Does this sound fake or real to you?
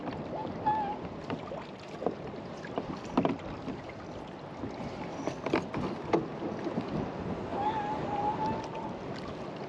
real